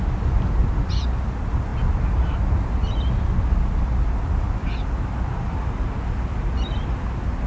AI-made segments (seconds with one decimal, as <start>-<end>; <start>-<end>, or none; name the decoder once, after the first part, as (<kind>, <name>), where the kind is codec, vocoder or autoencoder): none